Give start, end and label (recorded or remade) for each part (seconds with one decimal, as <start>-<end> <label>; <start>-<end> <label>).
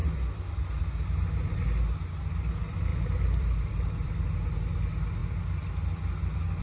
0.0-0.8 remade; 0.8-2.9 recorded; 2.9-4.2 remade; 4.2-6.6 recorded